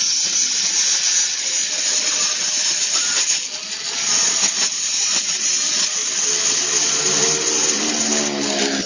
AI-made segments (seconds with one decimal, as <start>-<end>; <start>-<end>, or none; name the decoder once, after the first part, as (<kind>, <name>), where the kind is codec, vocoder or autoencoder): 1.6-2.2 (vocoder, BigVGAN v2); 6.0-7.9